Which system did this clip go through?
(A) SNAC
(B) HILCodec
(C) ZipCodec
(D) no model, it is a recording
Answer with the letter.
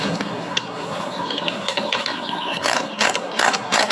A